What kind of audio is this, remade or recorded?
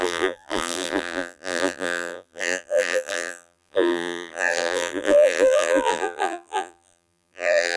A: remade